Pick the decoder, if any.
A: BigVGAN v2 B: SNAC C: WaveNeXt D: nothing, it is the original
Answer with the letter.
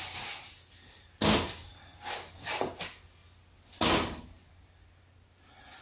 D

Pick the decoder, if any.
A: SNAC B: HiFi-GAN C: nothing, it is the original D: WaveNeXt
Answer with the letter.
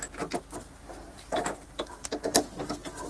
C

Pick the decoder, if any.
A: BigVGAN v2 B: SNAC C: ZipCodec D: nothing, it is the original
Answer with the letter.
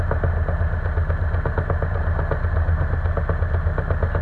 D